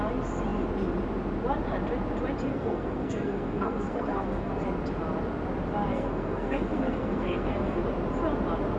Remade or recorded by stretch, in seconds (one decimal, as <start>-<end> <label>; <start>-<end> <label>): 0.0-2.5 recorded; 2.5-4.5 remade; 4.5-5.9 recorded; 5.9-7.8 remade; 7.8-8.8 recorded